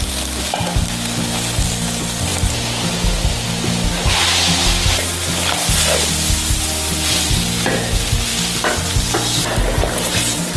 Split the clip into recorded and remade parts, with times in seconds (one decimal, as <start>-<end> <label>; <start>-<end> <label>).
0.0-10.6 recorded